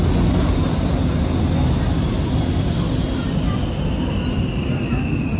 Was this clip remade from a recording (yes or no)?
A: no